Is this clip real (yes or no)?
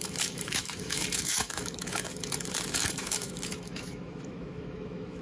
no